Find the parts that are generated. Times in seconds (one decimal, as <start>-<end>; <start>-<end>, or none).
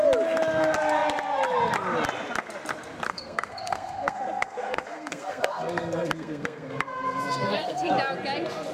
3.1-7.9